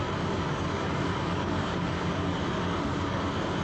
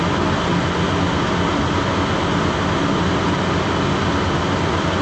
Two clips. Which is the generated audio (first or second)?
first